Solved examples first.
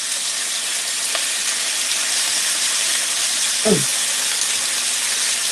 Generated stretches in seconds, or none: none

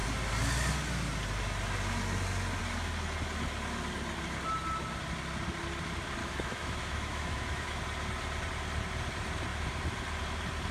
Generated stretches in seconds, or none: 6.2-7.8

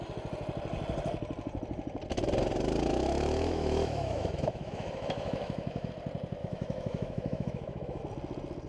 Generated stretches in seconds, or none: 2.9-5.9; 6.4-8.0

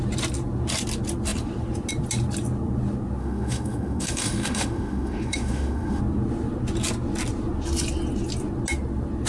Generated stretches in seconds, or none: 3.2-6.0

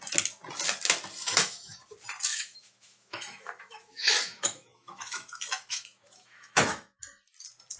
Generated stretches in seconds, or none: 1.2-1.8; 2.3-7.0

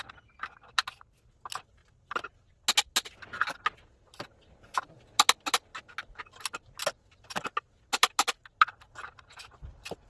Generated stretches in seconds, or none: none

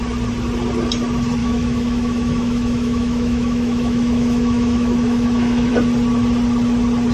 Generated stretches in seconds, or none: 1.4-5.7

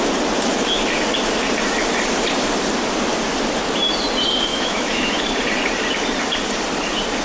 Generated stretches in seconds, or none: 4.5-5.2